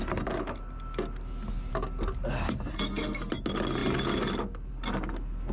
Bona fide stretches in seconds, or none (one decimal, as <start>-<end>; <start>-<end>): 0.0-2.7; 3.3-5.5